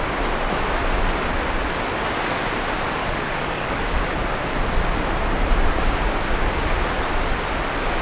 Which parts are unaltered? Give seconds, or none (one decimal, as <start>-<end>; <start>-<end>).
0.0-3.0; 3.8-8.0